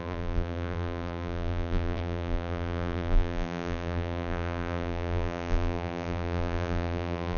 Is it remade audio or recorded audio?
remade